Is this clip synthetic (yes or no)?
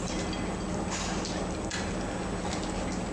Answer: no